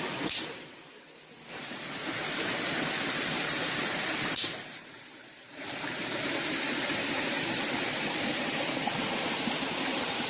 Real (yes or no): no